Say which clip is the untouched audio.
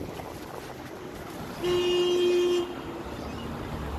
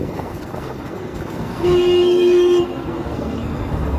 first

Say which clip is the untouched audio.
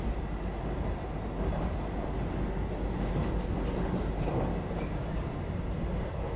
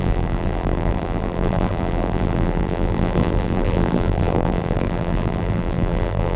first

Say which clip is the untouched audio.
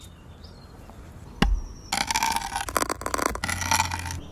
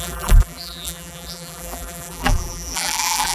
first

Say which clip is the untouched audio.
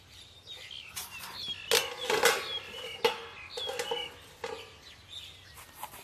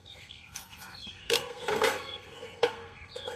first